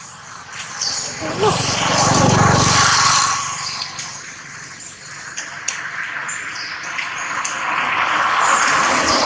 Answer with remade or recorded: recorded